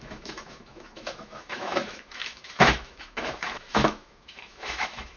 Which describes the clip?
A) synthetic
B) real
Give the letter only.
A